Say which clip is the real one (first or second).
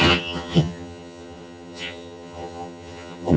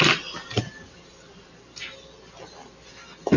second